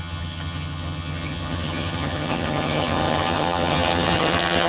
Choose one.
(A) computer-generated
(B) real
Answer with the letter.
A